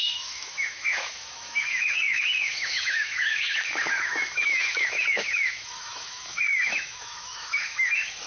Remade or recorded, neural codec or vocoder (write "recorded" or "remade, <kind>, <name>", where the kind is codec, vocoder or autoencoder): remade, autoencoder, DAC-VAE